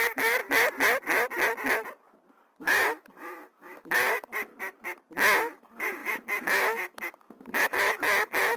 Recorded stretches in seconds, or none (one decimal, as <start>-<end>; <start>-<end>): 0.4-2.6; 4.5-5.5